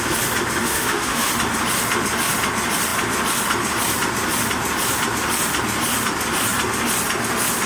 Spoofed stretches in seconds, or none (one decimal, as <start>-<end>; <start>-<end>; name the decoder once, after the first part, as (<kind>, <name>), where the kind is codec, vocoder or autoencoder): 0.6-1.3 (autoencoder, DAC-VAE)